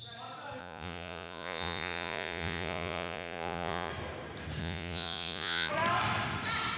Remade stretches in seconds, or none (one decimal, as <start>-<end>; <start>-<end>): 0.6-3.9; 4.6-5.7